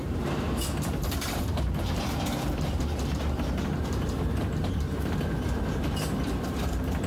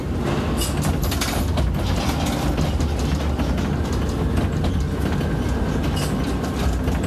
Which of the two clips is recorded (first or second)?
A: second